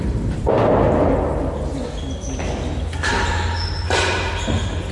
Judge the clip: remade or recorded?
recorded